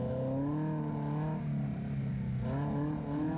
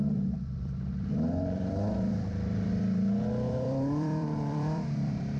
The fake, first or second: second